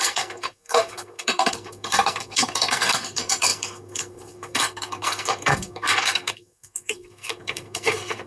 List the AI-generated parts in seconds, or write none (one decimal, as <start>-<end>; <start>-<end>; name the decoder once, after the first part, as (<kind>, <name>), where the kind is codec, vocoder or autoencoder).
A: 0.0-8.3 (codec, SNAC)

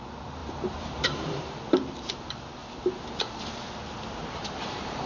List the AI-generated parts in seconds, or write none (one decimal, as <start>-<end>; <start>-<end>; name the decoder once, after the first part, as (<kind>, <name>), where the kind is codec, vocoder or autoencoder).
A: 0.0-2.6 (vocoder, BigVGAN v2); 4.1-5.1

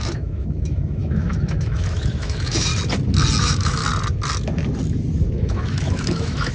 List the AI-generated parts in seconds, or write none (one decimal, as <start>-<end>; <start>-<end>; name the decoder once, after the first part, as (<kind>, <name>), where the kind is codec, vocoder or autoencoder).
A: 0.0-2.7 (autoencoder, DAC-VAE); 3.4-3.8; 5.3-6.5

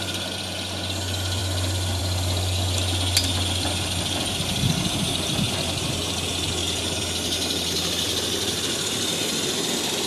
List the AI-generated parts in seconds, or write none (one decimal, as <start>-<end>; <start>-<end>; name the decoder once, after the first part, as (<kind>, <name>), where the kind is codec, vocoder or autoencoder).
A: none

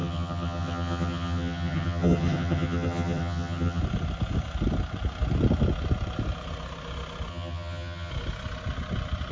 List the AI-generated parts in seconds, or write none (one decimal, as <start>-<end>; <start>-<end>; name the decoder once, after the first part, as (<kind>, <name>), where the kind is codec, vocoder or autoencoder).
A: 0.0-3.8 (vocoder, HiFi-GAN); 7.3-8.1

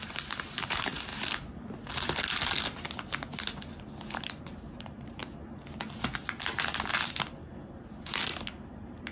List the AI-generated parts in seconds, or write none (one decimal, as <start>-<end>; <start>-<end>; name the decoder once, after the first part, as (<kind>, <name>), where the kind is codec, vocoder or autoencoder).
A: 0.0-1.1 (vocoder, BigVGAN v2); 4.4-5.2; 8.7-9.1